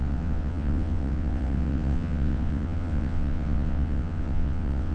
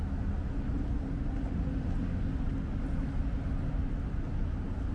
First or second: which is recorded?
second